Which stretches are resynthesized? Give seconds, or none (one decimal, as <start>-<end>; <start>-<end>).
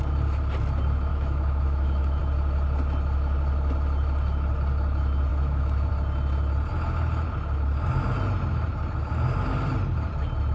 1.1-2.2; 5.3-5.9